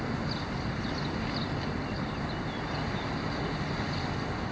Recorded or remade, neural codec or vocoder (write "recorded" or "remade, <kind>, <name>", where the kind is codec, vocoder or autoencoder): recorded